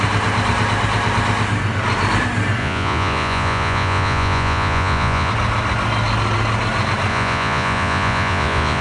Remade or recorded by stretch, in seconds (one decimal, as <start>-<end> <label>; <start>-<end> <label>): 0.0-2.6 recorded; 2.6-5.3 remade; 5.3-7.1 recorded; 7.1-8.8 remade